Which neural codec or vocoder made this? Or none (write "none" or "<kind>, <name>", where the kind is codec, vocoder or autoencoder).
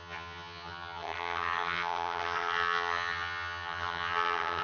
vocoder, HiFi-GAN